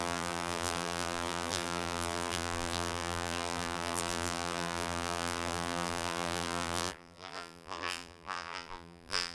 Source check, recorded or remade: remade